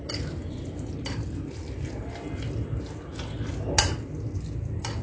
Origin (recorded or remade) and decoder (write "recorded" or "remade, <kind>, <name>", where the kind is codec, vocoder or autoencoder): recorded